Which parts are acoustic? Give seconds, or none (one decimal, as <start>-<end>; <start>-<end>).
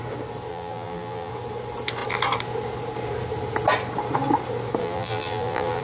0.0-0.5; 1.3-4.8